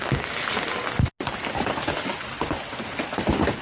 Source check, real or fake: real